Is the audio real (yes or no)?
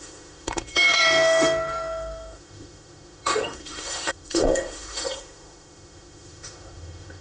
no